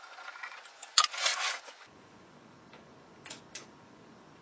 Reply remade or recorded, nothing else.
remade